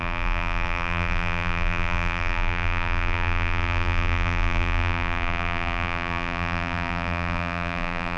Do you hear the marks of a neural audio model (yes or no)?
yes